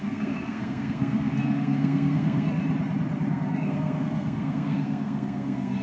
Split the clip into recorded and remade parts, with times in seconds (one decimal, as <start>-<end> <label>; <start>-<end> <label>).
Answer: 0.0-2.6 remade; 2.6-3.3 recorded; 3.3-5.8 remade